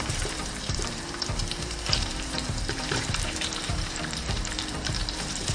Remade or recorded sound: remade